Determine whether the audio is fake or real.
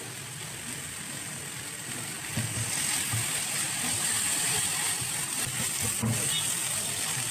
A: real